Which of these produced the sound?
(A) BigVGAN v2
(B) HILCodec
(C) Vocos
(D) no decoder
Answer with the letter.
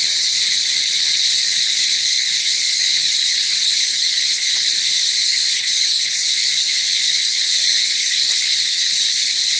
B